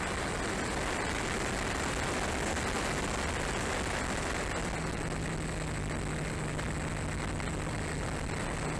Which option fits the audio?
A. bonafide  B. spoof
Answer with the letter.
A